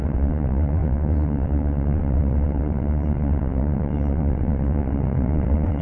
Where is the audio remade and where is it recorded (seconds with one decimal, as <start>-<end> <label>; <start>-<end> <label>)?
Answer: 0.0-5.8 remade